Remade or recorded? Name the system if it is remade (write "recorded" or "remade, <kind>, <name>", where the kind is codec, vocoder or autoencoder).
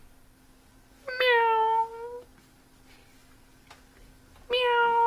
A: recorded